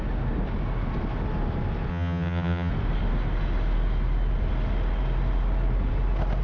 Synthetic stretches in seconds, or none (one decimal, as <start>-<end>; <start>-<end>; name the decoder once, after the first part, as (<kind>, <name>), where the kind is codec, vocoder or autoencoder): 1.9-2.7 (vocoder, HiFi-GAN)